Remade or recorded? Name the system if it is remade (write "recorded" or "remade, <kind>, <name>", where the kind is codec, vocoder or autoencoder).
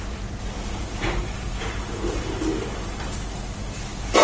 remade, vocoder, BigVGAN v2